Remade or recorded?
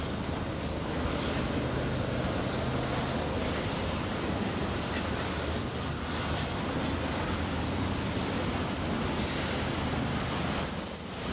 recorded